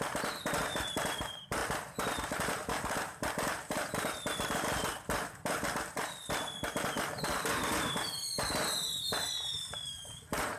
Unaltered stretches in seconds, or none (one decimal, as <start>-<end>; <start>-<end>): 0.0-10.6